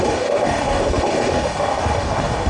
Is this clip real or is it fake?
fake